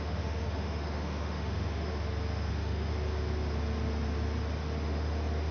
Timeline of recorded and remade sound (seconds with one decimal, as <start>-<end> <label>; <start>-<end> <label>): 0.0-1.9 remade; 1.9-2.5 recorded; 2.5-2.9 remade; 2.9-5.5 recorded